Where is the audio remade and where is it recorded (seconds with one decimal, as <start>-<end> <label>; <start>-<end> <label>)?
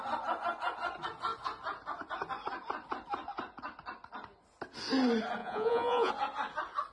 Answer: 0.0-5.4 recorded; 5.4-6.1 remade; 6.1-6.9 recorded